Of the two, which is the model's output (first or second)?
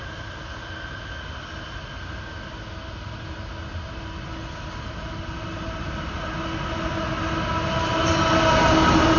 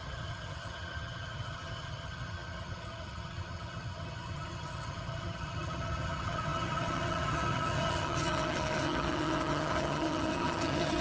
second